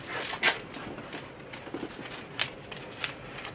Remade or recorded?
recorded